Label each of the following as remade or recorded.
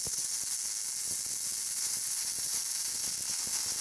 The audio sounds recorded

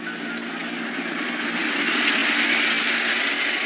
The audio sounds recorded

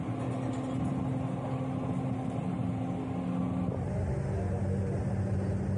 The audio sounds recorded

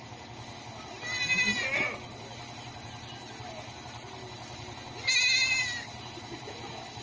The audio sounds recorded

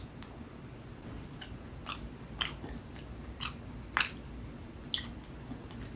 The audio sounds recorded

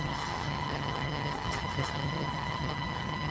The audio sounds remade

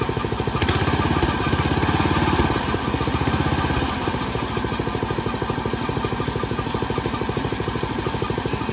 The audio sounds recorded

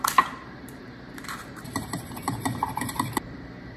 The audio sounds remade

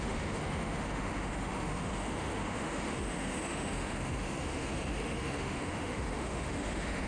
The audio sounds remade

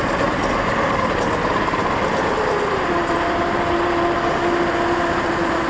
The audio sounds recorded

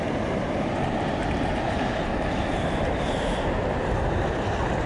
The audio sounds recorded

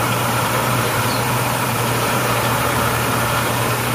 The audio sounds remade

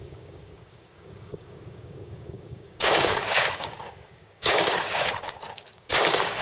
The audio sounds remade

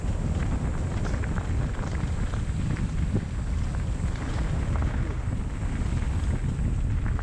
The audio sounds recorded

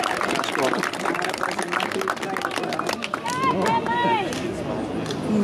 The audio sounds recorded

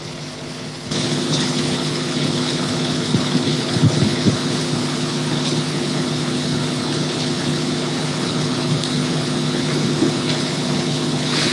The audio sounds remade